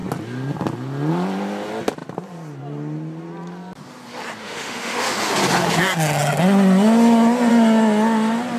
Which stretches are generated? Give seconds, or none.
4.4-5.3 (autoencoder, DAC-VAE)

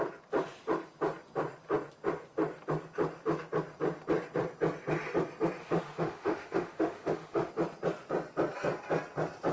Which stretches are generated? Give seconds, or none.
5.6-7.5 (autoencoder, DAC-VAE)

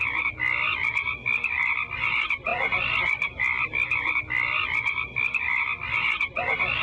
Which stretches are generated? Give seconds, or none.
none

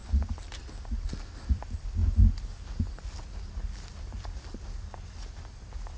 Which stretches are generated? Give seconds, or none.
none

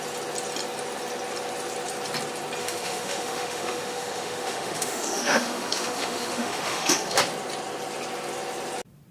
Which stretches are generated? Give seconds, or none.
2.6-7.2 (autoencoder, DAC-VAE)

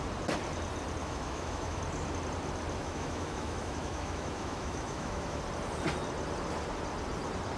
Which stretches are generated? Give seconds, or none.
1.0-1.8 (autoencoder, DAC-VAE); 2.8-5.4

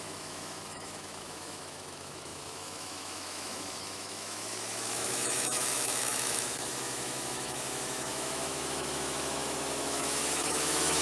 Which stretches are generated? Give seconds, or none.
0.0-11.0 (autoencoder, DAC-VAE)

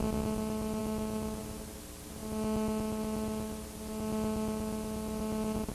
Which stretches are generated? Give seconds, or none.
0.8-1.4 (autoencoder, DAC-VAE)